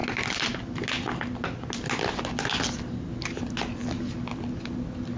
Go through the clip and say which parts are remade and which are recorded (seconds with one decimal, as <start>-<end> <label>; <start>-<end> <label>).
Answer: 0.0-5.2 recorded